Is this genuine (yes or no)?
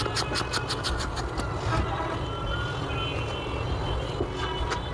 yes